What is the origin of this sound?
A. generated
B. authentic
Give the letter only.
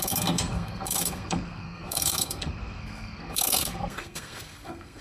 A